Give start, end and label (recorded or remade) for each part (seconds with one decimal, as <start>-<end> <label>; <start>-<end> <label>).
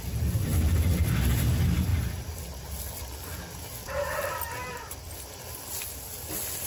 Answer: 0.0-6.7 recorded